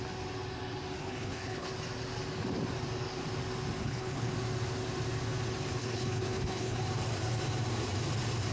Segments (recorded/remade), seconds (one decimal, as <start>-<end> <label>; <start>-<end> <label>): 0.0-1.0 recorded; 1.0-1.7 remade; 1.7-3.8 recorded; 3.8-4.3 remade; 4.3-5.8 recorded; 5.8-6.8 remade; 6.8-8.5 recorded